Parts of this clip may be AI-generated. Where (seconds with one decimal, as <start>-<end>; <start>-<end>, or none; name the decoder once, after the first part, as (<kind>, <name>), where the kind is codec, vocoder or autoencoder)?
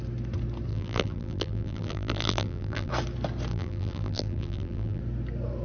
0.7-2.9 (vocoder, BigVGAN v2); 3.5-5.0